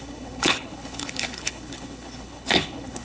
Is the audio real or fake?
fake